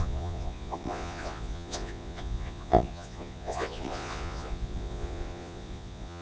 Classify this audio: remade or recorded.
remade